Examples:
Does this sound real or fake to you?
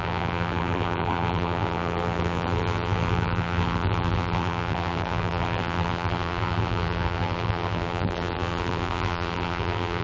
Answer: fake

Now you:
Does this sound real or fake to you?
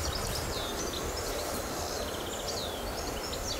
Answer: real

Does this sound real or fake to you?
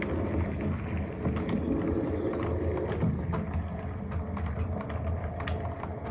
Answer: real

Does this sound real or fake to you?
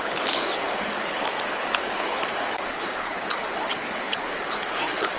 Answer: fake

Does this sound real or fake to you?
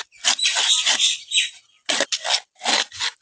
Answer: real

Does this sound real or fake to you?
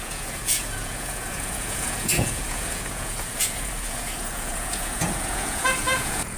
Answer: fake